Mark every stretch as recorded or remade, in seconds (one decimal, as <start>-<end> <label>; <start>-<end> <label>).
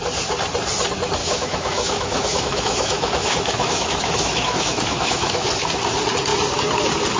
0.0-1.2 recorded; 1.2-5.5 remade; 5.5-7.2 recorded